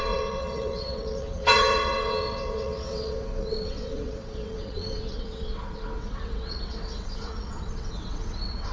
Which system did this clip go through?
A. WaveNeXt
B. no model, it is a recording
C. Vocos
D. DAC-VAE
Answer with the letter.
A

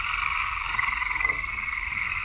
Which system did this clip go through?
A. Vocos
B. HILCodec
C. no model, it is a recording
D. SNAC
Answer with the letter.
D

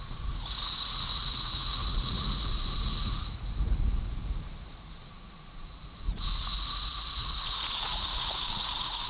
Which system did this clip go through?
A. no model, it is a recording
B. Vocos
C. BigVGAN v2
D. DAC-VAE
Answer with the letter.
B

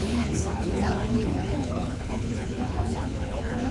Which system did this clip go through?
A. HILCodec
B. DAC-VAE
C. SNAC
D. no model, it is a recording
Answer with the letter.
A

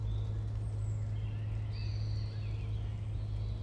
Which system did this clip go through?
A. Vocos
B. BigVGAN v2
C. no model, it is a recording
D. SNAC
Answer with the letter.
C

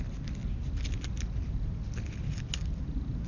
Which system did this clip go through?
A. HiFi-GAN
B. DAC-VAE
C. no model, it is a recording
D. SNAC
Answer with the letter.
C